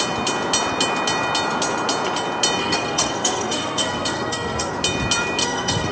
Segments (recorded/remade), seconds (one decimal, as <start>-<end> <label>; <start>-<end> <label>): 0.0-2.6 recorded; 2.6-4.7 remade; 4.7-5.4 recorded; 5.4-5.9 remade